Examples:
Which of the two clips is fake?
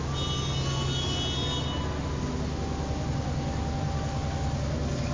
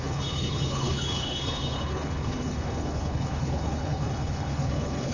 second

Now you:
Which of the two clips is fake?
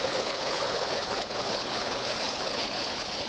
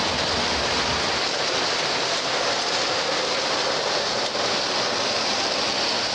first